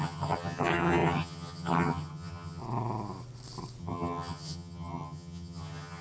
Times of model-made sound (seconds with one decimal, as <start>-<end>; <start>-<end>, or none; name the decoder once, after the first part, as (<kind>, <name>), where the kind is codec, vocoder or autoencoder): 0.0-2.6 (vocoder, HiFi-GAN); 3.8-6.0